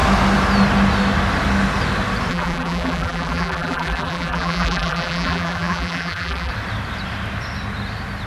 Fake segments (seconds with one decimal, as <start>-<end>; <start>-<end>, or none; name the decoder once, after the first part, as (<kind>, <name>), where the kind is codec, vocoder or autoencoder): 2.3-6.5 (vocoder, BigVGAN v2)